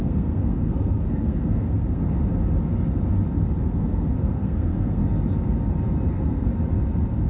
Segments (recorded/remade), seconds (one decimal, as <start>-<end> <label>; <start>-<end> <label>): 0.0-2.0 remade; 2.0-3.6 recorded; 3.6-5.0 remade; 5.0-6.1 recorded; 6.1-6.5 remade; 6.5-7.3 recorded